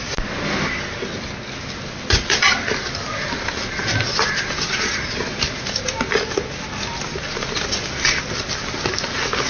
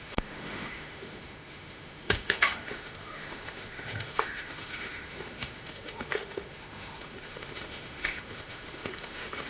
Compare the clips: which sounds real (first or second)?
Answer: first